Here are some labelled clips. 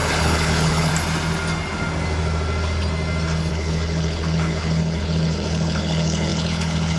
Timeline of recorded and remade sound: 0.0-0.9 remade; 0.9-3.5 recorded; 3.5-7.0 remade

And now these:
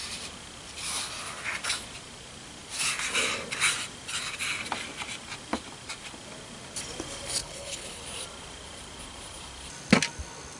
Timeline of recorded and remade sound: 0.0-7.4 recorded; 7.4-8.0 remade; 8.0-10.6 recorded